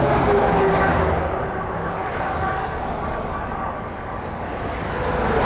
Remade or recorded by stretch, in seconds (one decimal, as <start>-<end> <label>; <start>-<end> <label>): 0.0-1.8 recorded; 1.8-4.9 remade; 4.9-5.4 recorded